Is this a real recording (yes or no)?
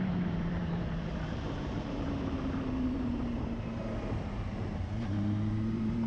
no